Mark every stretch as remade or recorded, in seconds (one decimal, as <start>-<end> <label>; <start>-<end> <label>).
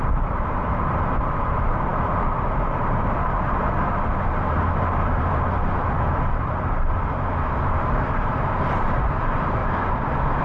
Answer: 0.0-10.4 remade